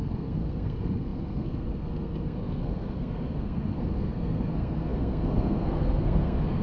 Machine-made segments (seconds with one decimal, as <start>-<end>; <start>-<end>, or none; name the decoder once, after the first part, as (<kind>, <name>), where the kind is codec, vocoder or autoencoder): 0.0-6.6 (codec, SNAC)